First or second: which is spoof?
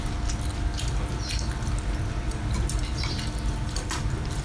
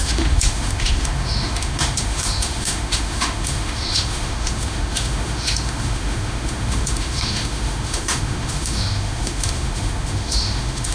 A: second